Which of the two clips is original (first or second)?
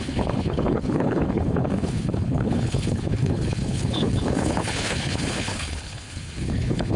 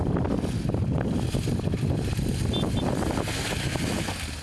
second